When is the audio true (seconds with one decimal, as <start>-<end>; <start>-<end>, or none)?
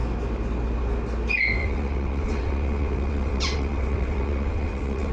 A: 0.0-1.6